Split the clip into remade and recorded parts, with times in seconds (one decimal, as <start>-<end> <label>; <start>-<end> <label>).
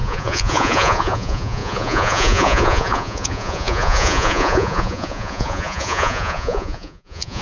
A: 0.0-7.4 remade